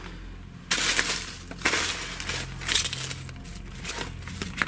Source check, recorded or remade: recorded